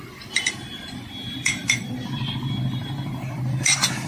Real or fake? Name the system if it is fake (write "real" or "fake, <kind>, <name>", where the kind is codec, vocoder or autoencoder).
fake, vocoder, BigVGAN v2